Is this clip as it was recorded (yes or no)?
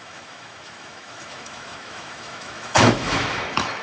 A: no